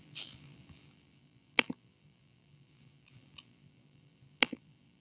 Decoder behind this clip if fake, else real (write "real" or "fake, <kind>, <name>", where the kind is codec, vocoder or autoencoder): fake, vocoder, BigVGAN v2